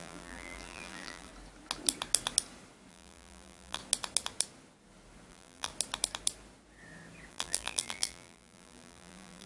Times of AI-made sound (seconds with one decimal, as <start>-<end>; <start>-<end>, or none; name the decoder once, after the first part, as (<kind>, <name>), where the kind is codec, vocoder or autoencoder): 0.0-1.3 (vocoder, BigVGAN v2); 2.9-3.8; 5.3-5.7; 7.3-9.5